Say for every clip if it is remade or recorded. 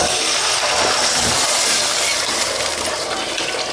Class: recorded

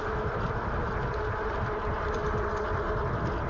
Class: recorded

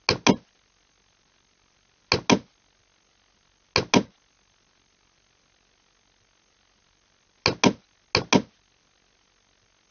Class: recorded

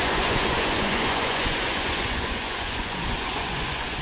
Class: remade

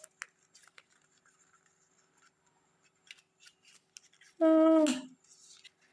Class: recorded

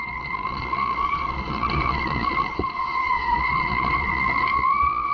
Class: remade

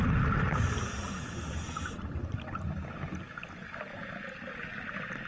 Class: recorded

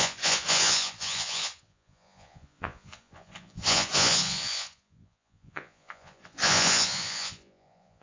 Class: remade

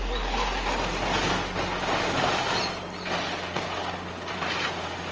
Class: recorded